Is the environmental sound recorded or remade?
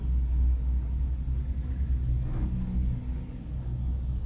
remade